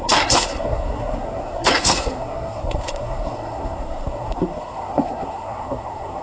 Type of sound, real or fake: fake